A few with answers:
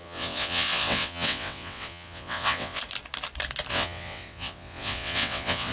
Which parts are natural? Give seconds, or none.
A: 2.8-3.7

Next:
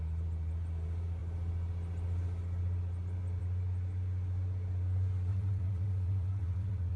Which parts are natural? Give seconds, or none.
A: 0.0-5.3

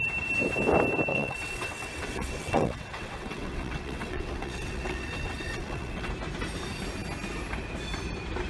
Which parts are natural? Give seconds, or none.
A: 0.0-1.1; 6.1-8.5

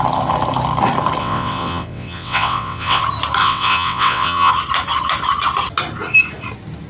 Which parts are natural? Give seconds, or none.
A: 0.0-1.2; 3.0-3.4; 4.5-6.9

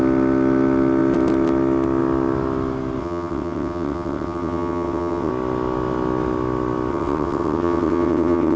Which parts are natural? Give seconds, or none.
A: 0.0-3.0; 5.3-6.9

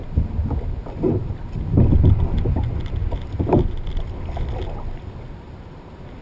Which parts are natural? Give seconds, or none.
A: 0.0-6.2

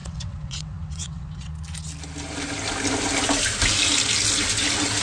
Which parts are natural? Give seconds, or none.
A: 1.5-5.0

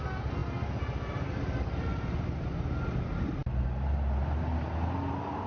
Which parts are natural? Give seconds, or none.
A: 0.0-5.5